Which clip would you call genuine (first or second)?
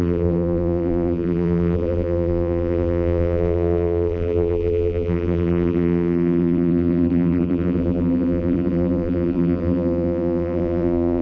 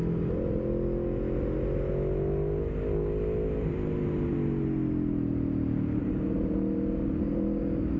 second